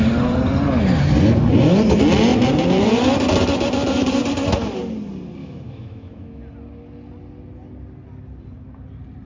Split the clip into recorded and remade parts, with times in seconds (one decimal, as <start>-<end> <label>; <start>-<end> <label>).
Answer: 0.0-5.4 recorded; 5.4-6.4 remade; 6.4-9.2 recorded